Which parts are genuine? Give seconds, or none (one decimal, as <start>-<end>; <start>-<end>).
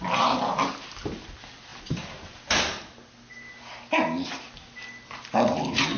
0.0-6.0